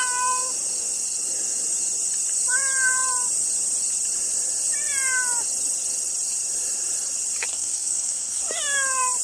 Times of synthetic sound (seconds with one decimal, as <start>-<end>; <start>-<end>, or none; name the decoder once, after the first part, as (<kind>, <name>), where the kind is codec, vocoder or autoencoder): 7.5-8.4 (codec, SNAC)